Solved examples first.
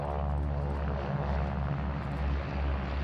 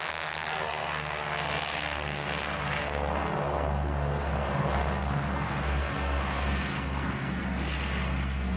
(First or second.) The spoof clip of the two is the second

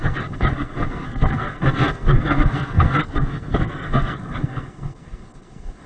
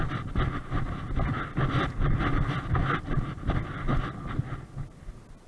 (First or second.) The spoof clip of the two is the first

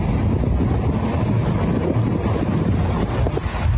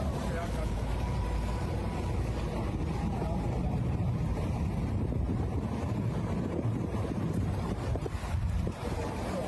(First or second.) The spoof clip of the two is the second